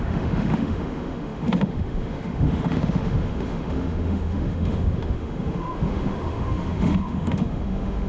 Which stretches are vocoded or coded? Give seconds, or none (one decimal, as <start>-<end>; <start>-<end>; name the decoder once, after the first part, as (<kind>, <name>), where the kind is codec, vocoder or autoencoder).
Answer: 0.0-8.1 (autoencoder, DAC-VAE)

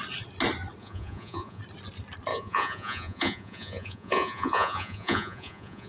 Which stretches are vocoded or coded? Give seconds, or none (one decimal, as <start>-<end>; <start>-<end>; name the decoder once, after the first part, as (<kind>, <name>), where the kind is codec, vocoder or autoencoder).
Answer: 0.8-1.6 (vocoder, Vocos); 2.3-5.9

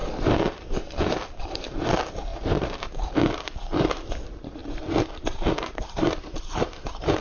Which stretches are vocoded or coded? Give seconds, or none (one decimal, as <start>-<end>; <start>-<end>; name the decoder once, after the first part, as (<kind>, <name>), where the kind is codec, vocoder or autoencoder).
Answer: 1.4-7.2 (vocoder, BigVGAN v2)

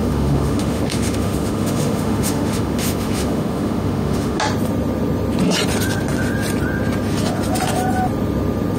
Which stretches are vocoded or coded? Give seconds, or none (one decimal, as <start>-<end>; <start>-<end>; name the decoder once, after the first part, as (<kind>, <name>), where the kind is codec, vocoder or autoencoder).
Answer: 0.0-4.4 (autoencoder, DAC-VAE)